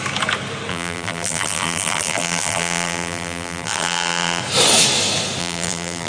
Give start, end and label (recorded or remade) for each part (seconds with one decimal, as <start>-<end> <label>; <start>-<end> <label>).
0.0-0.7 recorded; 0.7-4.4 remade; 4.4-5.4 recorded; 5.4-6.1 remade

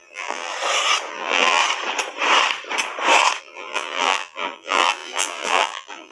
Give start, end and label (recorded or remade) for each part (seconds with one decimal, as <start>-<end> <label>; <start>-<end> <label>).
0.0-0.5 remade; 0.5-1.1 recorded; 1.1-1.6 remade; 1.6-3.4 recorded; 3.4-6.1 remade

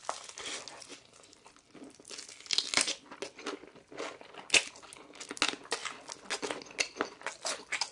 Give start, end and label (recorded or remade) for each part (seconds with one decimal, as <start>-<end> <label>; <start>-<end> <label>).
0.0-7.9 recorded

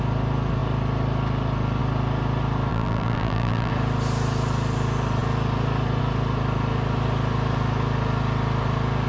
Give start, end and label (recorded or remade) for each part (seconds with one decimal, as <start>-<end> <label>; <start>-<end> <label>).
0.0-2.7 recorded; 2.7-3.7 remade; 3.7-9.1 recorded

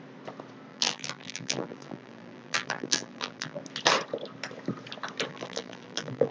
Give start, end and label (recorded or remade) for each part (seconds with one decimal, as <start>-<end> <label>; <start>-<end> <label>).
0.0-0.7 recorded; 0.7-3.6 remade; 3.6-5.3 recorded; 5.3-6.3 remade